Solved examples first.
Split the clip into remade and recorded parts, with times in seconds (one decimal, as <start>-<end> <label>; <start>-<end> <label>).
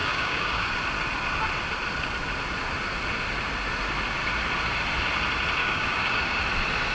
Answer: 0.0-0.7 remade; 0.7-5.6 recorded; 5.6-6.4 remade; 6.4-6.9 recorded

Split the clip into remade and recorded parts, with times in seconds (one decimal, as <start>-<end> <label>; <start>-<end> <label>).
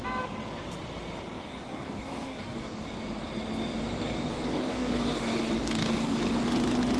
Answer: 0.0-1.4 recorded; 1.4-2.8 remade; 2.8-4.3 recorded; 4.3-6.2 remade; 6.2-7.0 recorded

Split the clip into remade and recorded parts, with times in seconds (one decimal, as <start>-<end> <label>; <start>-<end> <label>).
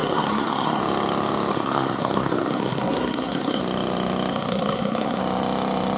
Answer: 0.0-0.8 remade; 0.8-1.5 recorded; 1.5-3.6 remade; 3.6-4.3 recorded; 4.3-5.2 remade; 5.2-6.0 recorded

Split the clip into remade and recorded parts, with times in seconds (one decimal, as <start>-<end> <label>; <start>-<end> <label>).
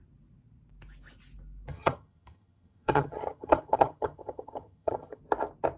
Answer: 0.0-1.7 recorded; 1.7-5.2 remade; 5.2-5.8 recorded